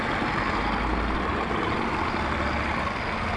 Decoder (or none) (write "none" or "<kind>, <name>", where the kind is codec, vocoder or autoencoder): none